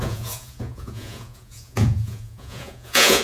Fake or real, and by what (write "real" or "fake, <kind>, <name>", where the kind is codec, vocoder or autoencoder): fake, vocoder, Vocos